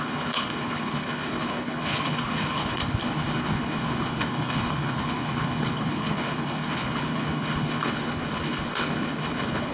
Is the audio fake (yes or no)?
yes